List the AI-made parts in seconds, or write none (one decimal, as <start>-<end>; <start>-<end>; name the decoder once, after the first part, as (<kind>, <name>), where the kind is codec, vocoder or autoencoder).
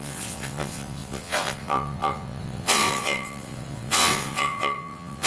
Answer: 0.0-5.3 (vocoder, WaveNeXt)